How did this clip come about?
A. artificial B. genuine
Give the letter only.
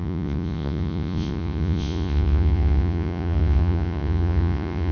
A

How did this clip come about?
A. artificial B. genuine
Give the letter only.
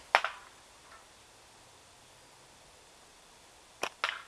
B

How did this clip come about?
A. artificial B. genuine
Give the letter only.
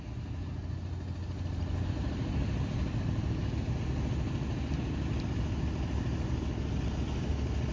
B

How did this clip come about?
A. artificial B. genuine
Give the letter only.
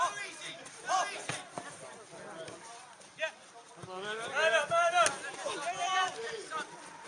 B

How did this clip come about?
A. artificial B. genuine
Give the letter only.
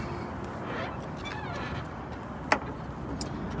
B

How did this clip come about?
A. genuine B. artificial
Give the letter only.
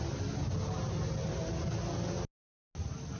A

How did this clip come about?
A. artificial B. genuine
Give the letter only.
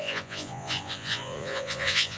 A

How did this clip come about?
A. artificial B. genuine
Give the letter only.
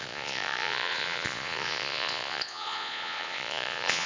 A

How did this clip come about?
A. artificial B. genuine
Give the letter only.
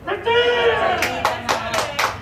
B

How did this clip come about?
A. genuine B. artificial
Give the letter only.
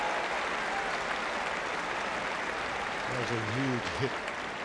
A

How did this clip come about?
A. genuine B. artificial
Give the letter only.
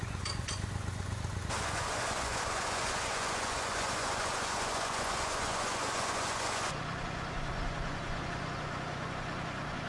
B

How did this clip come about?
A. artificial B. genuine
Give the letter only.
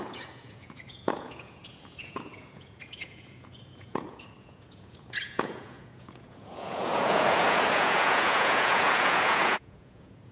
A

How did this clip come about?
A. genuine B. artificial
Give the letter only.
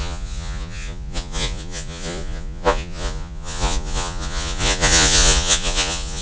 B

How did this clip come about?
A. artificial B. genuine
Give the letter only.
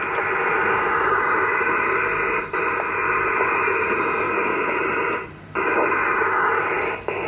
B